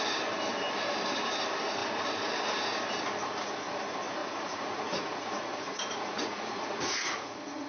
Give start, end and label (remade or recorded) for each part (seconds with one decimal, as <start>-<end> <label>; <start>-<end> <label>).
0.0-4.2 recorded; 4.2-7.7 remade